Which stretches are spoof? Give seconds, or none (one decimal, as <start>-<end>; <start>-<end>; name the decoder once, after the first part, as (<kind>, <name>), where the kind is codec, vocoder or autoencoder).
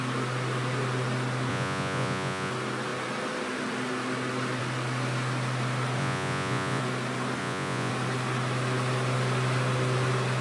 1.5-2.5 (vocoder, Vocos); 6.0-6.8; 7.4-7.9